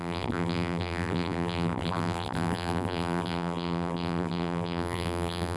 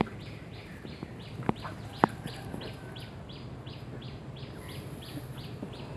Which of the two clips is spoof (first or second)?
first